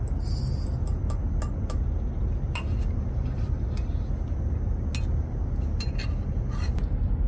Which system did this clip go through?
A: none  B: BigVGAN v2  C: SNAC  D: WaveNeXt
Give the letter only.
A